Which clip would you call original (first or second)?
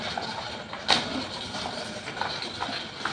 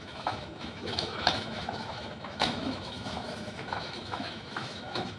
first